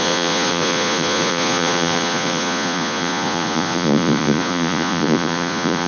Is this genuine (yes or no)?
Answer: no